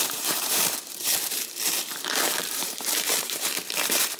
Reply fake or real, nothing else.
fake